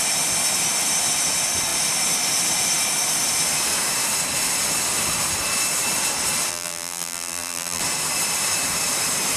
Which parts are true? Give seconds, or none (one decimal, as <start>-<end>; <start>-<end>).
0.0-6.5; 7.8-9.4